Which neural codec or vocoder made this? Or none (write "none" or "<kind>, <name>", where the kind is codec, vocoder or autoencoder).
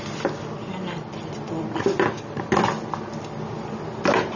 none